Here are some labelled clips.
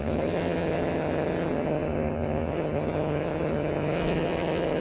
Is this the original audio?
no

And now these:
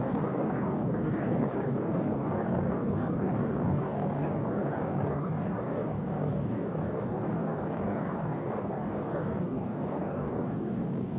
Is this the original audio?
no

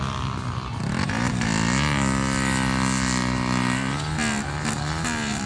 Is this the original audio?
yes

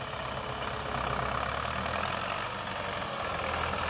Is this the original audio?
yes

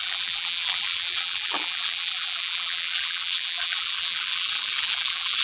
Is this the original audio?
no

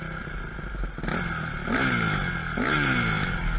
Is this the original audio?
yes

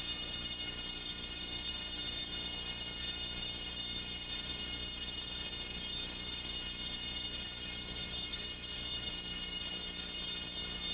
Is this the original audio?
no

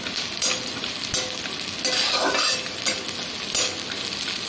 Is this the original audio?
yes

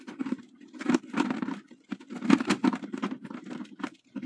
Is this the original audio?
yes